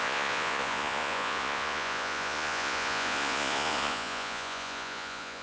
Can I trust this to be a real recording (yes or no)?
no